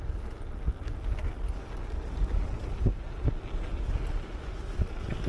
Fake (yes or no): no